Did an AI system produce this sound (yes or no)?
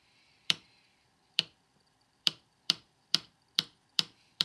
yes